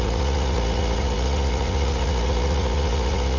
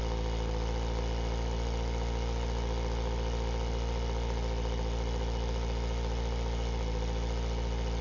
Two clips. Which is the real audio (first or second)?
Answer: second